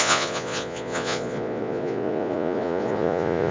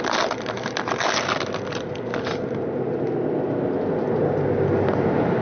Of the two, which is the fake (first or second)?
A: first